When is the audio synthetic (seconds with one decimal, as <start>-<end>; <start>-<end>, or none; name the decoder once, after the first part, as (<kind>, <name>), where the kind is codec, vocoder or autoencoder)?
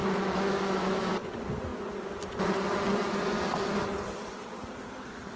0.0-1.1 (autoencoder, DAC-VAE)